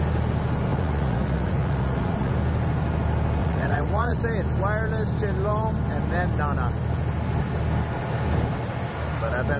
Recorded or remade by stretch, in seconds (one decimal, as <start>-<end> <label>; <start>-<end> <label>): 0.0-0.7 recorded; 0.7-2.3 remade; 2.3-3.4 recorded; 3.4-4.2 remade; 4.2-9.6 recorded